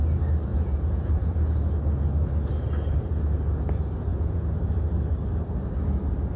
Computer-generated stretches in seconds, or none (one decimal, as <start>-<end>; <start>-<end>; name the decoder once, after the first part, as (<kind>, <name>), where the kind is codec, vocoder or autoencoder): 0.5-1.6 (vocoder, Vocos); 4.1-4.7